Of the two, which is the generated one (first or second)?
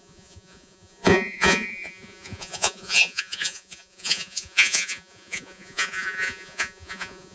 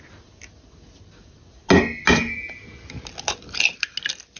first